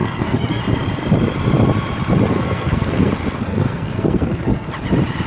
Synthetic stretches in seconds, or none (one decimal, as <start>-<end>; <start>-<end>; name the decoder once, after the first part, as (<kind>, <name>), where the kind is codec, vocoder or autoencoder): 0.0-0.6 (codec, SNAC); 2.3-3.1; 3.5-4.7